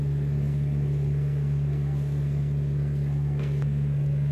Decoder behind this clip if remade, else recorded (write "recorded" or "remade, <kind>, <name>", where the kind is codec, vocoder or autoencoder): remade, codec, SNAC